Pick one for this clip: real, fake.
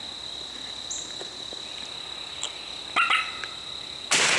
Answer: real